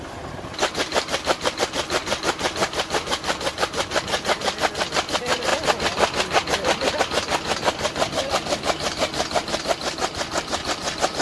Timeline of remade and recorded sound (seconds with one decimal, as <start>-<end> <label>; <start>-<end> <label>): 0.0-11.2 recorded